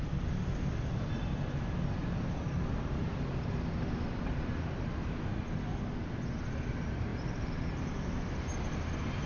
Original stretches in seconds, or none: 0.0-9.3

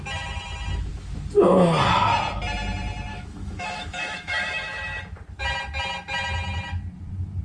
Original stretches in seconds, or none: 0.0-3.1; 5.0-7.4

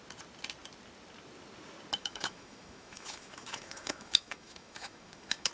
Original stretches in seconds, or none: 0.0-2.0

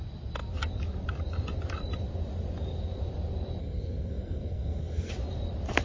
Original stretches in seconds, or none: 0.0-3.6; 5.1-5.8

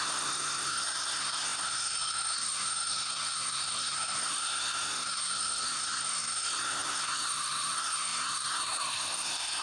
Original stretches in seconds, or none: none

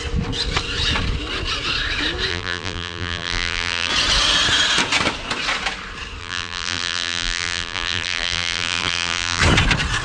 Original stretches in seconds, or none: 0.0-2.3; 3.9-6.2; 9.4-10.0

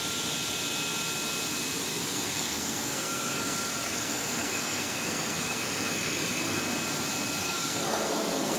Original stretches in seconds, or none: 0.0-1.9; 6.6-7.4